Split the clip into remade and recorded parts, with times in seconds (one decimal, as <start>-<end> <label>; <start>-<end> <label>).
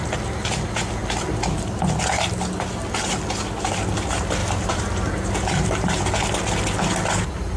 0.0-4.4 recorded; 4.4-6.1 remade; 6.1-7.6 recorded